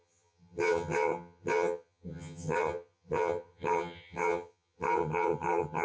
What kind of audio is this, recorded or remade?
remade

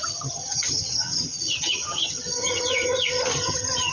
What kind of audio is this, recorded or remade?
remade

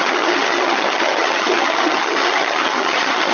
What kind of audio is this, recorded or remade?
remade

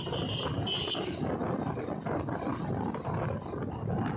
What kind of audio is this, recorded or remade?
recorded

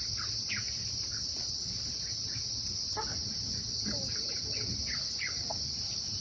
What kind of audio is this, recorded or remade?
recorded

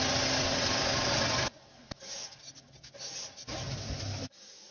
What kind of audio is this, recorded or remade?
recorded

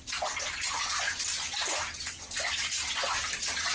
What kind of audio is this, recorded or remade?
recorded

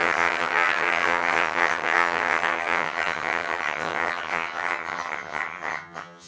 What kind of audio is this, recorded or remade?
remade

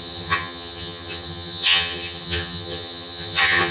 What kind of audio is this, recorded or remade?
remade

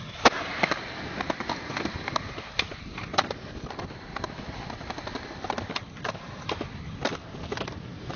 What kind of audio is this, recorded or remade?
recorded